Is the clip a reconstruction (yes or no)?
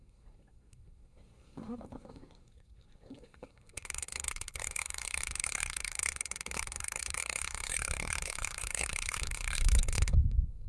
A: yes